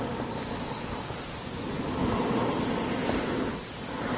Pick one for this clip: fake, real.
real